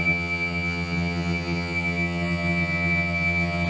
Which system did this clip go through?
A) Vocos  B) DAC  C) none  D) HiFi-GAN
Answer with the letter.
D